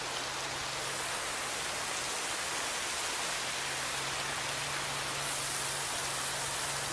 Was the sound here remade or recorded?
recorded